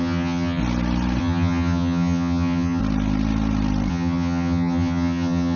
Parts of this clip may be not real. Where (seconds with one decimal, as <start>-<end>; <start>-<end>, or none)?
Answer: 0.0-0.6; 1.2-2.8; 3.9-5.6